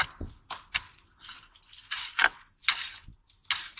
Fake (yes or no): no